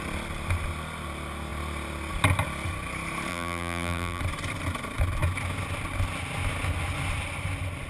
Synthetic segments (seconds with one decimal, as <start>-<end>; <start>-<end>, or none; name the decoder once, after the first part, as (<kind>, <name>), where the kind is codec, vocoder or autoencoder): 3.3-4.2 (vocoder, BigVGAN v2)